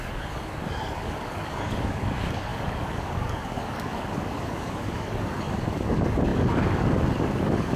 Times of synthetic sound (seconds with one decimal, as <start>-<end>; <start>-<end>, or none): 0.0-7.8